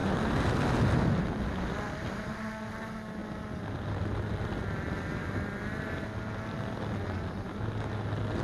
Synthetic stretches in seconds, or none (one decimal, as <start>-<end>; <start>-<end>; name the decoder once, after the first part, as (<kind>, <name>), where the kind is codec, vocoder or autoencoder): none